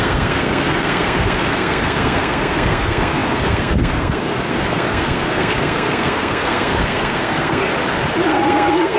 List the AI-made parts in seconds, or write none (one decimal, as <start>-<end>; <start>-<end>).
0.0-7.7; 8.3-9.0